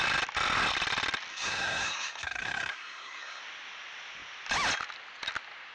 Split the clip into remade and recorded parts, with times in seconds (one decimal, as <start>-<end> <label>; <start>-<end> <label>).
0.0-1.3 recorded; 1.3-3.4 remade; 3.4-5.7 recorded